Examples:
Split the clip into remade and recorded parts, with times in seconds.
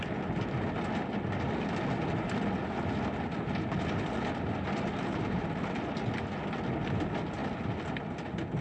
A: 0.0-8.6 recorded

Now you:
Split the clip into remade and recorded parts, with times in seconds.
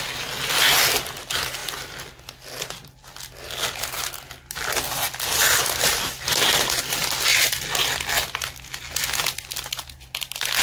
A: 0.0-1.6 recorded; 1.6-3.0 remade; 3.0-10.6 recorded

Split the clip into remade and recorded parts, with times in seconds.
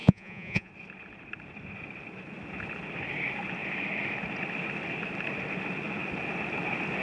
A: 0.0-0.7 remade; 0.7-7.0 recorded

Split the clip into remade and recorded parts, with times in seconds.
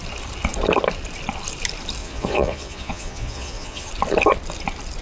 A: 0.0-2.0 recorded; 2.0-3.9 remade; 3.9-5.0 recorded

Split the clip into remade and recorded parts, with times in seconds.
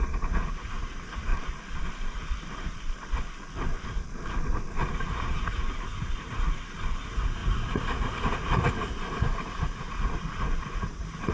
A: 0.0-1.3 remade; 1.3-4.9 recorded; 4.9-11.3 remade